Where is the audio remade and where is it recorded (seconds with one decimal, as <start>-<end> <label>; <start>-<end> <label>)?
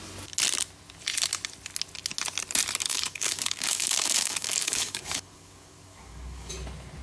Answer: 0.0-2.9 recorded; 2.9-6.5 remade; 6.5-7.0 recorded